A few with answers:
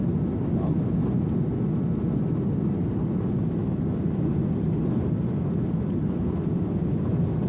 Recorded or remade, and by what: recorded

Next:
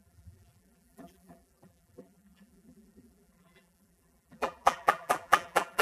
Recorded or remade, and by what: remade, vocoder, BigVGAN v2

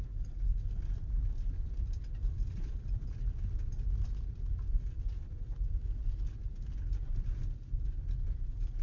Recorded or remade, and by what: recorded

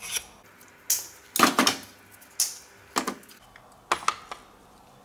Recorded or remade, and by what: recorded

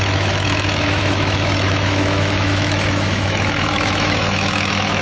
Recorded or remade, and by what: remade, autoencoder, DAC-VAE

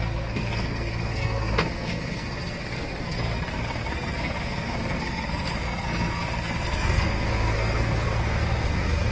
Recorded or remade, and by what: remade, codec, SNAC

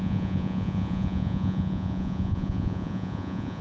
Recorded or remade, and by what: remade, vocoder, Vocos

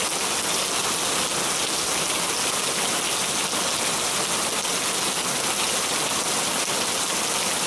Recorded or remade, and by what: recorded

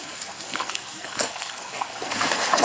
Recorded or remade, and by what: remade, codec, SNAC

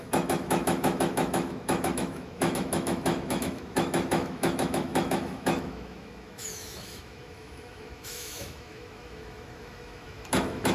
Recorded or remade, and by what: remade, autoencoder, DAC-VAE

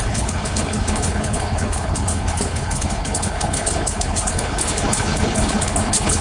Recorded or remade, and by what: remade, codec, HILCodec